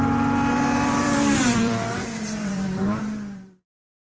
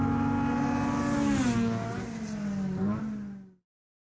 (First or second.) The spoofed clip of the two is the first